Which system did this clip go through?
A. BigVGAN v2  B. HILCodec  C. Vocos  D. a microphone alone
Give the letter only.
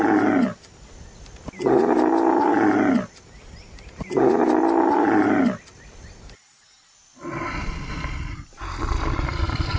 D